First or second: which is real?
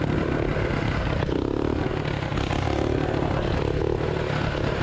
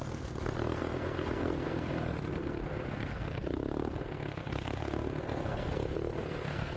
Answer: first